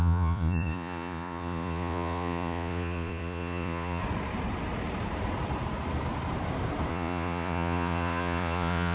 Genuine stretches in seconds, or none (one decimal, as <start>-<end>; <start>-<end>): 4.0-6.9